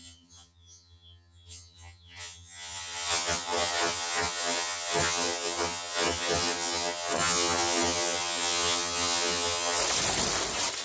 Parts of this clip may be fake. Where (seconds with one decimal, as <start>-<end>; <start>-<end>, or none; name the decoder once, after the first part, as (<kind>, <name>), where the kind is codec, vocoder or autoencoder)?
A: 0.0-9.8 (vocoder, HiFi-GAN)